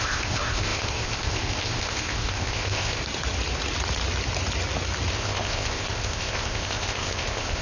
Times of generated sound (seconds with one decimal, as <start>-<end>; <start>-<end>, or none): 0.0-3.0; 5.1-7.6